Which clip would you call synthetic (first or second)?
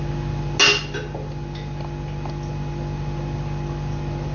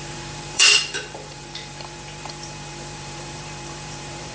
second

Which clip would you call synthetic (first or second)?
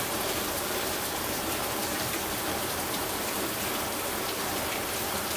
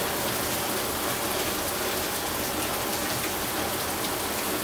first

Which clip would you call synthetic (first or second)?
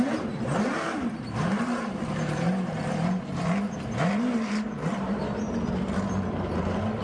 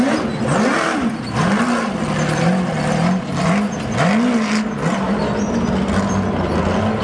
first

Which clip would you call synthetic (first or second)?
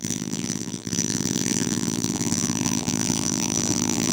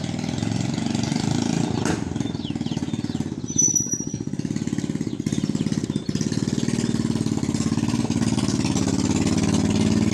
first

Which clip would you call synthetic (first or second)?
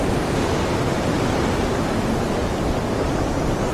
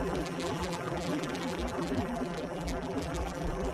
second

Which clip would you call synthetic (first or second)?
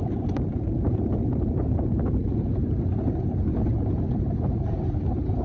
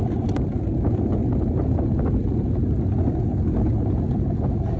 first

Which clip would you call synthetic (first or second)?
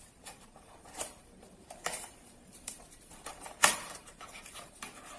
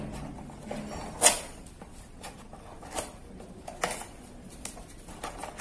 first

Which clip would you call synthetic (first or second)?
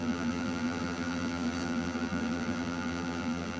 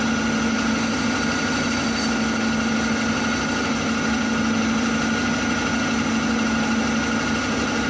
first